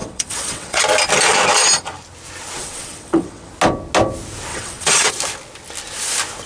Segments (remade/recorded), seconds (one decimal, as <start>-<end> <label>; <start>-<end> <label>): 0.0-0.8 remade; 0.8-2.6 recorded; 2.6-3.5 remade; 3.5-4.5 recorded; 4.5-5.1 remade; 5.1-6.5 recorded